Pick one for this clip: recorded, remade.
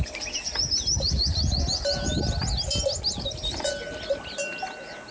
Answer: recorded